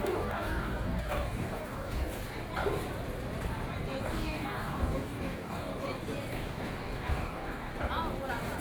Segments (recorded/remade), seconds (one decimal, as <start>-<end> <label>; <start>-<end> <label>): 0.0-2.2 remade; 2.2-4.0 recorded; 4.0-5.7 remade; 5.7-6.3 recorded; 6.3-7.7 remade; 7.7-8.6 recorded